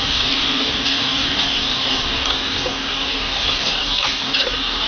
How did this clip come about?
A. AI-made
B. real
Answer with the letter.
A